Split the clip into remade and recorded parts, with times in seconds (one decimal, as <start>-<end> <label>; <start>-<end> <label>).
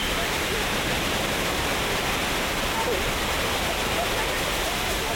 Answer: 0.0-1.7 remade; 1.7-4.8 recorded; 4.8-5.2 remade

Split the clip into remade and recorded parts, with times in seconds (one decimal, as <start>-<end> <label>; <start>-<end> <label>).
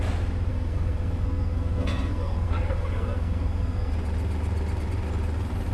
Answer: 0.0-0.5 recorded; 0.5-3.9 remade; 3.9-5.7 recorded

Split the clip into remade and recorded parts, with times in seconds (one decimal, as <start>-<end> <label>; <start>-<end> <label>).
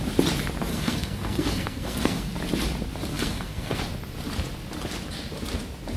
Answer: 0.0-0.7 recorded; 0.7-2.3 remade; 2.3-3.1 recorded; 3.1-3.8 remade; 3.8-6.0 recorded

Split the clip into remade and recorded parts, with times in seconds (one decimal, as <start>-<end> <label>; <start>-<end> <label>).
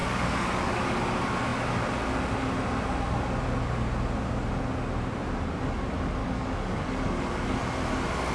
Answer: 0.0-0.8 remade; 0.8-6.2 recorded; 6.2-7.6 remade; 7.6-8.3 recorded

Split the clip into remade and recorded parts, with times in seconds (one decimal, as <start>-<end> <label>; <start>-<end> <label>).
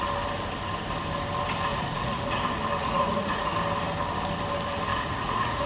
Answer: 0.0-1.7 recorded; 1.7-2.4 remade; 2.4-2.8 recorded; 2.8-3.5 remade; 3.5-4.9 recorded; 4.9-5.7 remade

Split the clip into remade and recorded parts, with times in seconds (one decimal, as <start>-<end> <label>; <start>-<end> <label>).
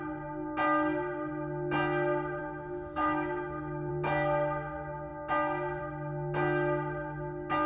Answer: 0.0-2.4 recorded; 2.4-3.9 remade; 3.9-7.7 recorded